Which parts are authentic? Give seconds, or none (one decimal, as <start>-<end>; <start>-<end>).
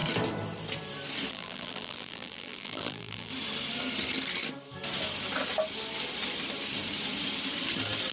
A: 0.0-1.3; 3.3-8.1